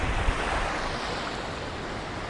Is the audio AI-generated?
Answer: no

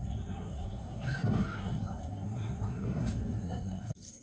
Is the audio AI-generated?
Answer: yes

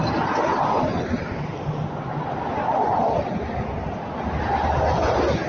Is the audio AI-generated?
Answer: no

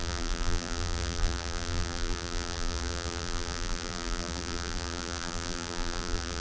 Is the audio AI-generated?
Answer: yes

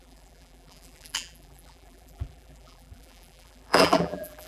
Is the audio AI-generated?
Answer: yes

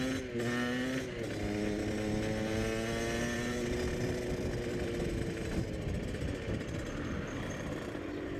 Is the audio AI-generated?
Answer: no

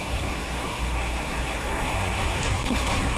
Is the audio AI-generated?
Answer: yes